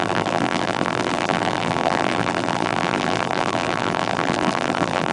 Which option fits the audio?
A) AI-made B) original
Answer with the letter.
A